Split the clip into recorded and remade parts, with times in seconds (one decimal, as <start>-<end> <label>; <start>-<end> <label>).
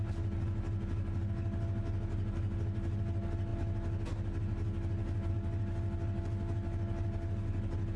0.0-8.0 recorded